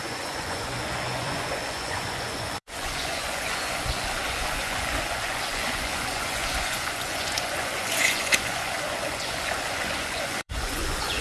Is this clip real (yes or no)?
no